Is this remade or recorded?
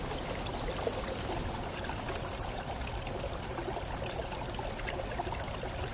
recorded